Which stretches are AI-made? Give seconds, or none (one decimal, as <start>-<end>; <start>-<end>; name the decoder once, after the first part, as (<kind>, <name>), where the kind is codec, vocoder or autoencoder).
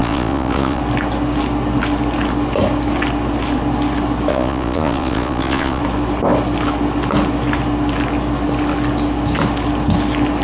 0.0-0.8 (vocoder, Vocos); 4.3-5.8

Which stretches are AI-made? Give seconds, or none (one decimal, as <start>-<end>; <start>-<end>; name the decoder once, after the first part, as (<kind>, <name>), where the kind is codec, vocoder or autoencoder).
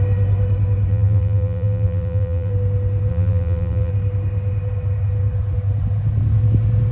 0.9-2.5 (vocoder, BigVGAN v2); 3.1-3.9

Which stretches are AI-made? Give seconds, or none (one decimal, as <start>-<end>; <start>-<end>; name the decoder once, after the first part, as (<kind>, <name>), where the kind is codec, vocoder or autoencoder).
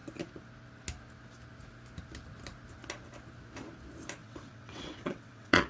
4.2-5.7 (vocoder, WaveNeXt)